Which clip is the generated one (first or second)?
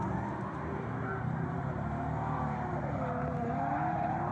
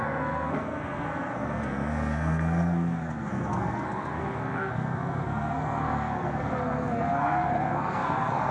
second